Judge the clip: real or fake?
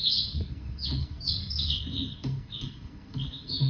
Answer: fake